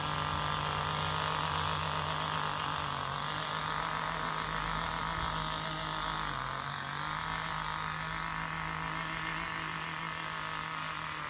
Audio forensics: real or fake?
real